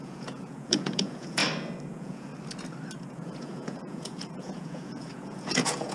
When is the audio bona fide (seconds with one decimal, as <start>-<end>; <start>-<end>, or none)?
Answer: 1.4-1.9; 2.3-3.1